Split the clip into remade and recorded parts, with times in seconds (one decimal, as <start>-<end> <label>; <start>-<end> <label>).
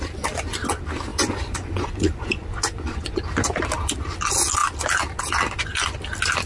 0.0-1.1 recorded; 1.1-3.2 remade; 3.2-6.5 recorded